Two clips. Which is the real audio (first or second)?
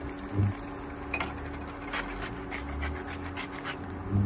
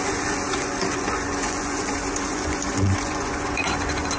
first